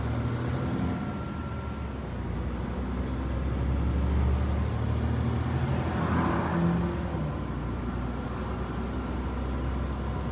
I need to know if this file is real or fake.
real